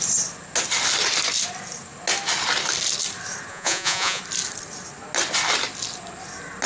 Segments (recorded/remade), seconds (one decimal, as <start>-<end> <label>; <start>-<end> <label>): 0.0-3.5 recorded; 3.5-4.2 remade; 4.2-6.7 recorded